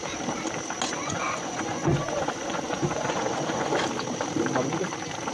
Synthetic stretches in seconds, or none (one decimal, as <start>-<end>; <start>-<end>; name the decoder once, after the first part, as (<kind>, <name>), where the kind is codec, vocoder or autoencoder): 1.0-3.8 (vocoder, Vocos)